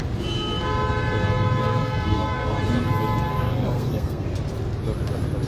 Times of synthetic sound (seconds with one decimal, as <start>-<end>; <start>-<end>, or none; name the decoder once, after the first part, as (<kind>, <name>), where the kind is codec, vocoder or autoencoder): 1.6-2.6 (codec, SNAC); 3.3-4.3